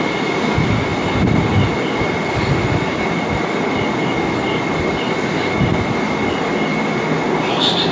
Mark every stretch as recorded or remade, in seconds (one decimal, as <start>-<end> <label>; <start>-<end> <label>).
0.0-7.9 recorded